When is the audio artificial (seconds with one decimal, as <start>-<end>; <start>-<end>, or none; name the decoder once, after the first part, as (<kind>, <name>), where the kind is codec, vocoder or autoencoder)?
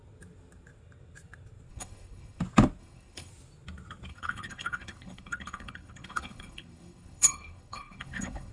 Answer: 1.7-2.4 (codec, HILCodec); 2.8-3.3; 4.1-8.5